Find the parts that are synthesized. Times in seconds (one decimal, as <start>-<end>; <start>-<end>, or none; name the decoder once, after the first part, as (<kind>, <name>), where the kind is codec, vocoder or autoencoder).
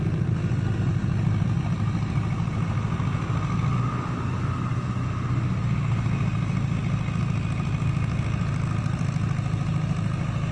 none